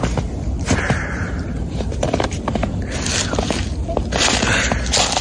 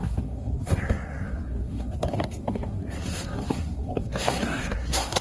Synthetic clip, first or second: second